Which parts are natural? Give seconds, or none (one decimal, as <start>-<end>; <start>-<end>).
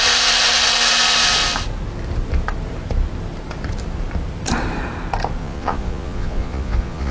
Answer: 0.0-5.4